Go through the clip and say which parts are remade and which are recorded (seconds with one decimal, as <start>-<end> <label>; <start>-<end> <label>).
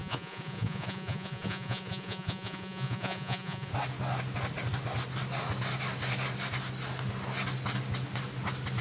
0.0-3.7 remade; 3.7-8.8 recorded